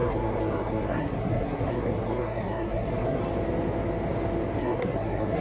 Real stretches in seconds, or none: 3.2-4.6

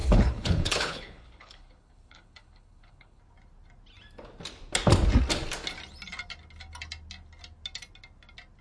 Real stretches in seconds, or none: 3.2-8.6

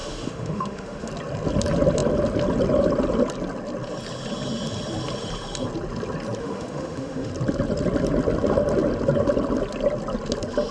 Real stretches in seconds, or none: 1.1-6.4; 7.3-10.7

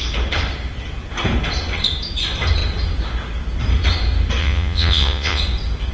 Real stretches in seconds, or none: 0.0-4.4; 5.4-5.9

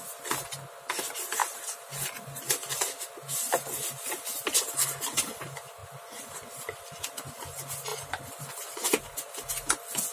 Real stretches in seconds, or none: 0.0-1.4; 2.2-7.9; 8.5-10.1